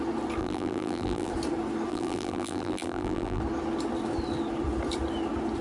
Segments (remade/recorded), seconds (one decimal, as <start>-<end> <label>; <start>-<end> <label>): 0.0-0.4 recorded; 0.4-1.3 remade; 1.3-1.9 recorded; 1.9-3.4 remade; 3.4-5.6 recorded